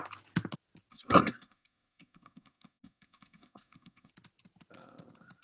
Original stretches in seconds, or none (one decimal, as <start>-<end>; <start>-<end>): 0.0-0.9; 4.1-5.4